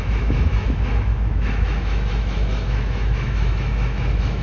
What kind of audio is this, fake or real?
fake